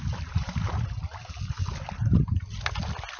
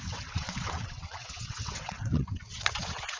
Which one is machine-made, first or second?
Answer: second